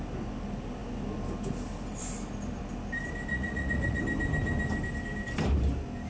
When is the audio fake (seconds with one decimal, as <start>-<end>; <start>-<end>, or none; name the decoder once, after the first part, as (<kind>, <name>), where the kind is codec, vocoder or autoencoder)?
3.3-4.0 (vocoder, Vocos)